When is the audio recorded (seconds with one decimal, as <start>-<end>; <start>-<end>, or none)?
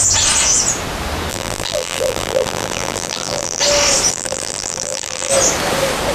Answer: 0.0-1.3; 3.6-4.1; 5.3-6.1